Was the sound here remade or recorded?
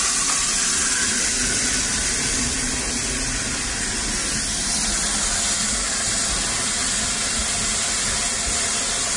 recorded